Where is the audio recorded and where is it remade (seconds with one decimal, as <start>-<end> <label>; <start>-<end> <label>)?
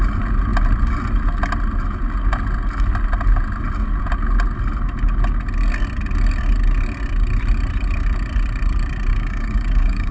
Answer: 0.0-9.1 recorded; 9.1-10.1 remade